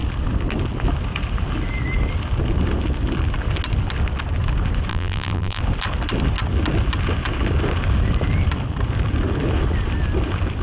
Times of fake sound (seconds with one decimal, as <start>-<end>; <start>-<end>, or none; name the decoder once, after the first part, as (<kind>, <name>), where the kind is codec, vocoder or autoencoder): 4.9-5.6 (vocoder, BigVGAN v2)